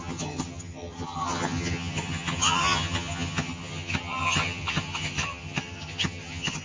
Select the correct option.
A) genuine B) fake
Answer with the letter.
B